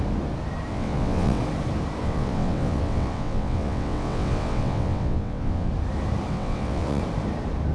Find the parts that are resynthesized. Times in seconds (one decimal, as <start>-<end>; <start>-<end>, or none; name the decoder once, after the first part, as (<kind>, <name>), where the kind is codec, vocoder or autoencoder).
0.7-1.4 (vocoder, WaveNeXt); 2.0-5.7; 6.3-7.0